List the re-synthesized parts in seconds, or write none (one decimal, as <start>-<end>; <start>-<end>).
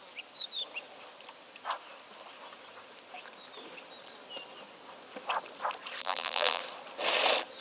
6.0-6.6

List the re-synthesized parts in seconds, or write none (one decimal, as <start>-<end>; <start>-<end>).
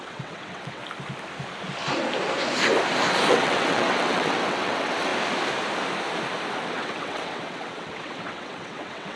0.0-0.8; 3.3-5.1; 6.7-9.2